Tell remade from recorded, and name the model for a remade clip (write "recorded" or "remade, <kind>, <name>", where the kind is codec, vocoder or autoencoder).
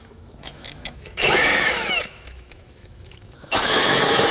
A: remade, autoencoder, DAC-VAE